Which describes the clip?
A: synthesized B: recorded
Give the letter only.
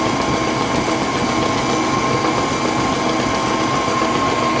B